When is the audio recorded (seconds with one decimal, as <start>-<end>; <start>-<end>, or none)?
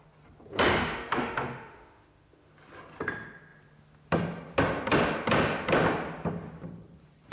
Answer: 0.0-0.8; 2.5-7.3